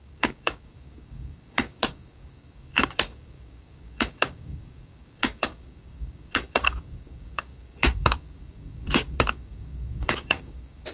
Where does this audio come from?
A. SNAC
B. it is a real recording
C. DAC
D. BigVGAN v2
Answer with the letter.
C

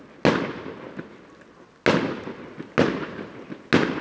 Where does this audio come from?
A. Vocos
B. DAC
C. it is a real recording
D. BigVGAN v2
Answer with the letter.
C